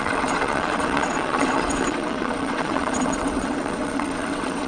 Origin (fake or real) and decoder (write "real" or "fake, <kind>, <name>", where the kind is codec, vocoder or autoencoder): fake, vocoder, WaveNeXt